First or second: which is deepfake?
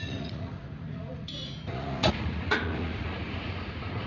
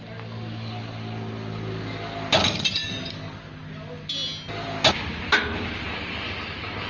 first